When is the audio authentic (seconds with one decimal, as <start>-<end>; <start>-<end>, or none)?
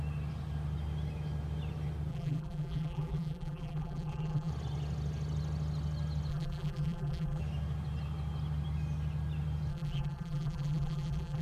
0.0-2.1; 4.5-6.3; 7.4-9.7